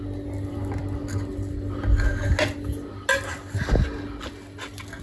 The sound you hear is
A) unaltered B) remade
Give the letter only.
A